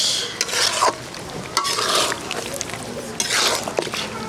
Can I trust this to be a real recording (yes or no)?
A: yes